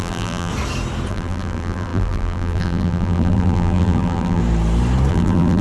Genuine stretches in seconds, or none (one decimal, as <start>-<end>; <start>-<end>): 0.5-1.1; 4.4-5.1